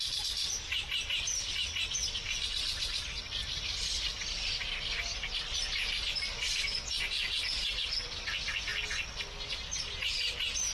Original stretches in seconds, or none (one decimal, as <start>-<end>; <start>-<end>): 0.0-10.7